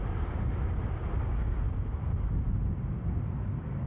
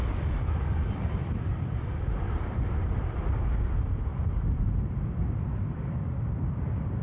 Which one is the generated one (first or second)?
second